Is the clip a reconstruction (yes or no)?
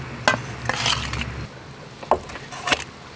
no